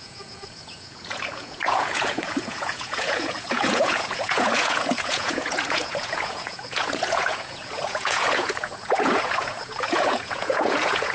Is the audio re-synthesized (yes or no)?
yes